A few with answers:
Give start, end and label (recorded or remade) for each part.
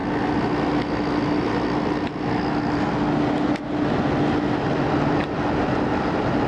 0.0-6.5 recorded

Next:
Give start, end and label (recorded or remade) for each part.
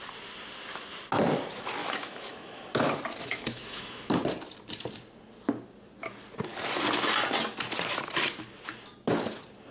0.0-1.8 recorded; 1.8-2.6 remade; 2.6-3.2 recorded; 3.2-4.1 remade; 4.1-9.7 recorded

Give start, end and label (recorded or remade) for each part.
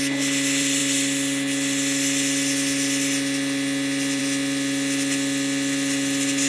0.0-6.5 recorded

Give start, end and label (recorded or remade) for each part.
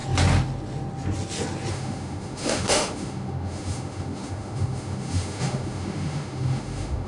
0.0-1.7 recorded; 1.7-7.1 remade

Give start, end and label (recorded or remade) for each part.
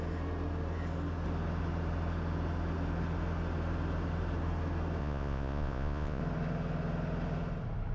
0.0-5.0 recorded; 5.0-6.2 remade; 6.2-7.9 recorded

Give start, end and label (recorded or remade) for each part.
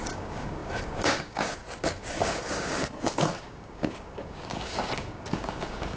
0.0-6.0 remade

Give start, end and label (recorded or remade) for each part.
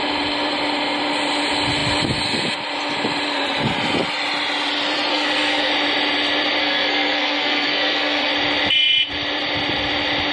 0.0-5.1 recorded; 5.1-5.7 remade; 5.7-6.6 recorded; 6.6-8.3 remade; 8.3-10.3 recorded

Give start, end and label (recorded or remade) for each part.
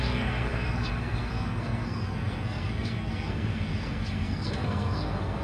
0.0-5.4 remade